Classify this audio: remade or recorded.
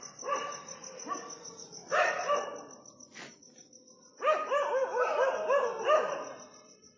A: recorded